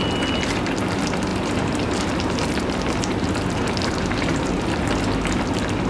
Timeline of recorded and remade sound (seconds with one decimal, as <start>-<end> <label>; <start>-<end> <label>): 0.0-1.3 recorded; 1.3-4.8 remade; 4.8-5.9 recorded